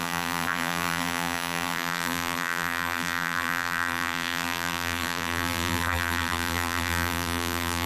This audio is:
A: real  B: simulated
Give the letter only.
B